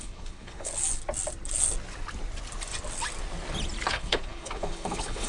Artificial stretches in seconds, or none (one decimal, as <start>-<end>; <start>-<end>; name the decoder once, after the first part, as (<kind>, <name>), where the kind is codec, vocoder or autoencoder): 0.0-0.7 (codec, HILCodec); 3.9-5.3